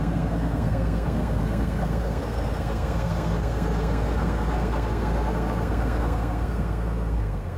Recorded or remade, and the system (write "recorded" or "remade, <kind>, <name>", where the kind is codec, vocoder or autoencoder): remade, codec, SNAC